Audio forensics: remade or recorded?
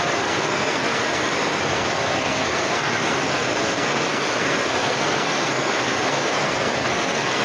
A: remade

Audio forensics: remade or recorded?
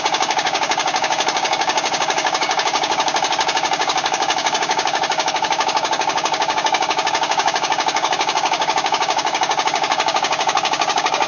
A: remade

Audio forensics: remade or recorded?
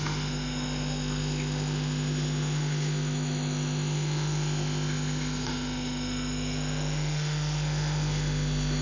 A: remade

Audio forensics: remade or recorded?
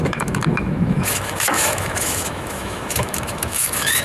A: remade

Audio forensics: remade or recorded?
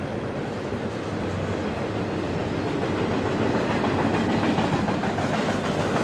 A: recorded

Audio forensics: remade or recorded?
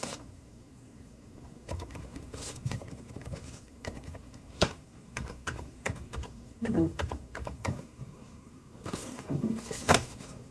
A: remade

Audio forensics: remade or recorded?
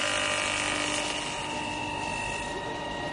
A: recorded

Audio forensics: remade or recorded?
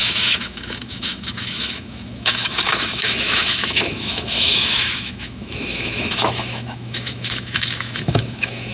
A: remade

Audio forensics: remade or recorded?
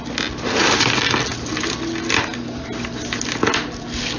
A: recorded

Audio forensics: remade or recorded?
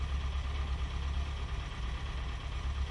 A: recorded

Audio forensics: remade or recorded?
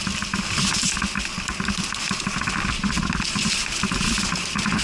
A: recorded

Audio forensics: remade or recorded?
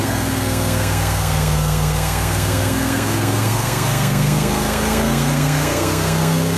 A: remade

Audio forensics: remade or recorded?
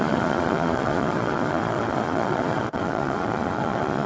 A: remade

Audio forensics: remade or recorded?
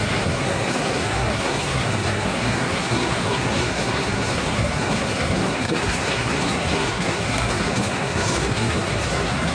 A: remade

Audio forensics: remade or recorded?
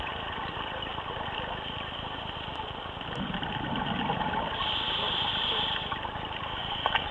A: recorded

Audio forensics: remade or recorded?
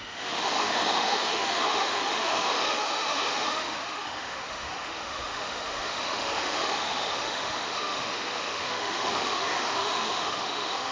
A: remade